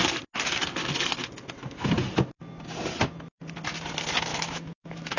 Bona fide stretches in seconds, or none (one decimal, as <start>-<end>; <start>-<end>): 0.0-4.3